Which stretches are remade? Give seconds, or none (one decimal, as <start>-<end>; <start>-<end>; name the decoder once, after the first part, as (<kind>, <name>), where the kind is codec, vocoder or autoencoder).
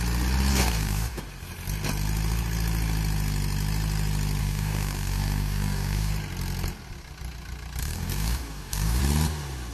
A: 0.5-1.2 (codec, DAC); 4.4-6.1; 7.8-9.0